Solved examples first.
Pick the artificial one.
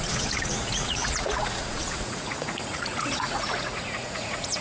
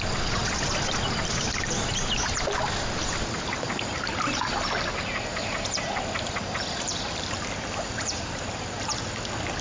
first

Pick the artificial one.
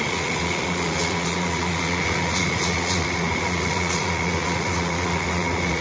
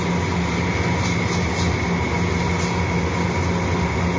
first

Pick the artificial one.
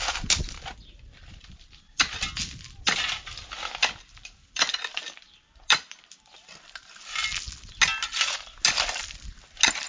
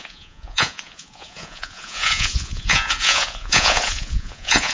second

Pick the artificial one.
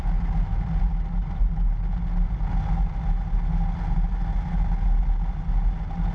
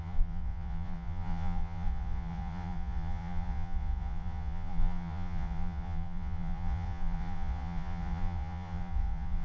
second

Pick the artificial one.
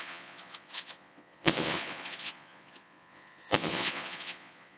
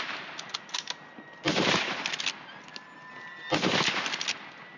first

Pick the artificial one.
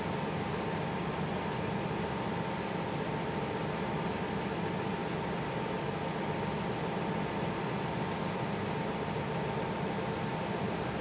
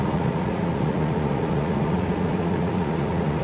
second